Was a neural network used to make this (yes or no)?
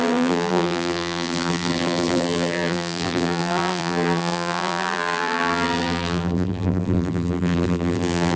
yes